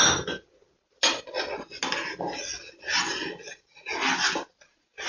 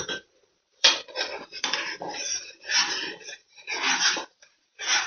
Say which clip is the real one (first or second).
first